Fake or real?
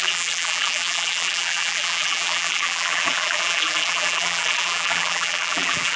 fake